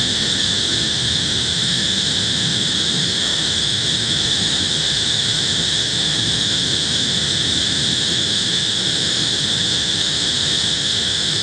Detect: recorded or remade remade